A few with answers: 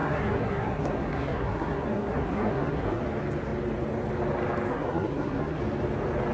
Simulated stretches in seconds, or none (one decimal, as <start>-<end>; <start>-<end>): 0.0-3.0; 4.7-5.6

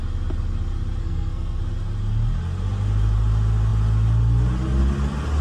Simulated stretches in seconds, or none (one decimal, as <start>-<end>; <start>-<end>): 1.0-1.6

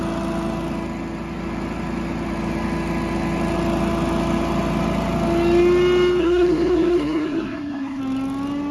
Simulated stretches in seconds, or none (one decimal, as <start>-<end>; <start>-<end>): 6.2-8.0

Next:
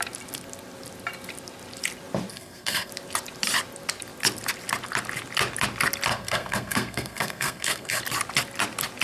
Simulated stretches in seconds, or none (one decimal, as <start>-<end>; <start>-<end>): 2.3-2.9; 6.1-8.0

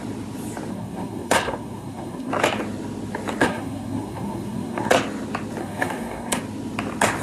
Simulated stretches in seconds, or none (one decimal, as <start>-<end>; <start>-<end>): 0.7-2.3; 3.4-4.9; 5.6-6.4

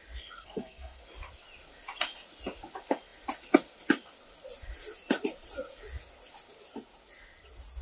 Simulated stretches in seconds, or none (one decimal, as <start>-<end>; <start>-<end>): 0.4-1.0

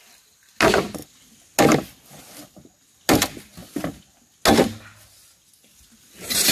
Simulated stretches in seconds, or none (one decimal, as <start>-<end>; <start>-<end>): none